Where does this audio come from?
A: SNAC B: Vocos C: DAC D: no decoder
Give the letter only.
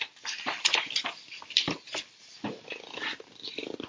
D